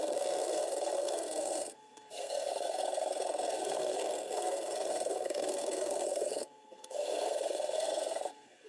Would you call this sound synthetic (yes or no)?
yes